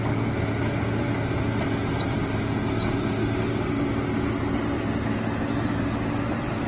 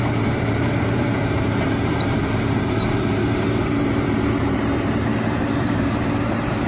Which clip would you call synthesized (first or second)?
second